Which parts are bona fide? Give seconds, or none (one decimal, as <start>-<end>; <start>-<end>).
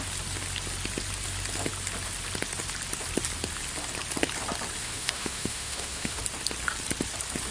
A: 0.0-4.8; 6.2-7.5